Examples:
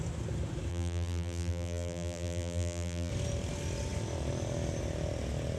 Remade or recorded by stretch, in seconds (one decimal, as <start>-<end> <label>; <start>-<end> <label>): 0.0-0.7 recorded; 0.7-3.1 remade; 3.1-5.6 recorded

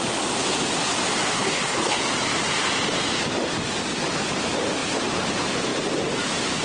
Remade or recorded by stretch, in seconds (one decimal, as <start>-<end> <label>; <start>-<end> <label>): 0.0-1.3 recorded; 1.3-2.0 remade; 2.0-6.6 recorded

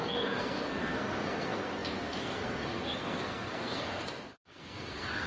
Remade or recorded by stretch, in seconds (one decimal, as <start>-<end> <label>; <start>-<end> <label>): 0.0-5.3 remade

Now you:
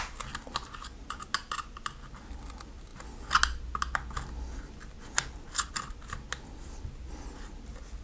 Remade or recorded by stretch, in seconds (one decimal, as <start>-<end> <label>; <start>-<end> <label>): 0.0-8.0 recorded